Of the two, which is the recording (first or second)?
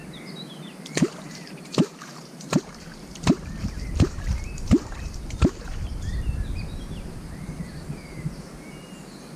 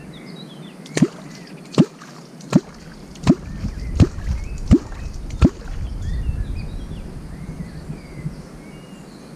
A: second